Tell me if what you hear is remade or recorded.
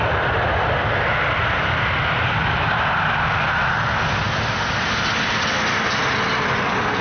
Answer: recorded